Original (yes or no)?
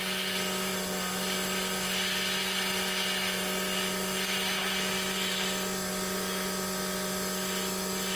yes